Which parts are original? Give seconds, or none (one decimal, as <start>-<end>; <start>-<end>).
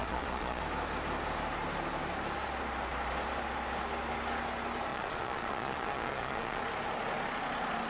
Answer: 0.6-4.9; 6.6-7.9